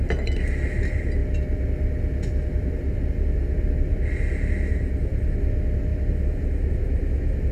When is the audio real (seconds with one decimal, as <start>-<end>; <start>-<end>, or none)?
0.0-5.9; 6.7-7.5